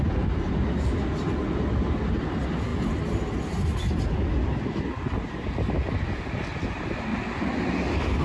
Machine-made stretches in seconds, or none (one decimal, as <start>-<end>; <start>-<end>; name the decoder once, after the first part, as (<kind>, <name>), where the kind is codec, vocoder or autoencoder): none